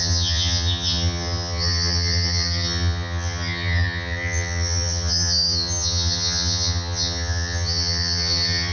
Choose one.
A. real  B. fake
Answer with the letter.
B